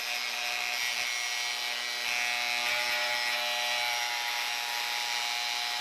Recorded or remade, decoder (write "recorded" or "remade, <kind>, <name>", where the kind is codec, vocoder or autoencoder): recorded